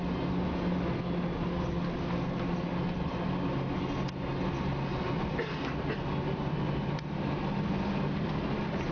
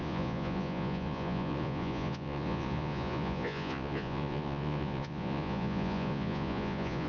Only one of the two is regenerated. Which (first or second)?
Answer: second